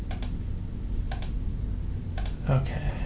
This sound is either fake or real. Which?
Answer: real